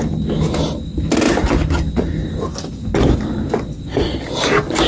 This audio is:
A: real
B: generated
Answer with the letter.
A